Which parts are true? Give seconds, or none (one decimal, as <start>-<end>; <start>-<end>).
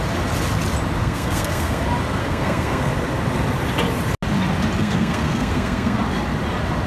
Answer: 0.0-1.0; 1.8-2.2; 2.9-4.8; 6.0-6.9